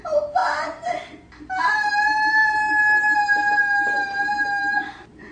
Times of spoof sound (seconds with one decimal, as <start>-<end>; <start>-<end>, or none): 2.3-2.8